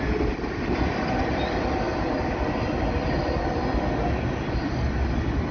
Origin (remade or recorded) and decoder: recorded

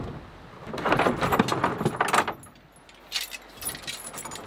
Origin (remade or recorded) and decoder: recorded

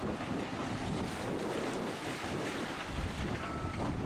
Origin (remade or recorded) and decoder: recorded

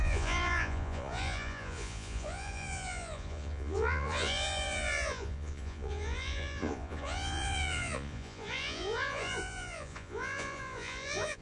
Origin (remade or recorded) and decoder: remade, vocoder, Vocos